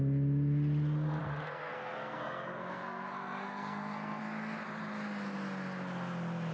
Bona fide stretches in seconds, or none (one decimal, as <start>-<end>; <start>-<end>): 0.0-1.2; 4.2-6.5